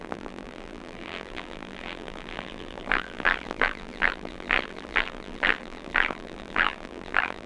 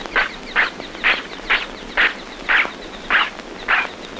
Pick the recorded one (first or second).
second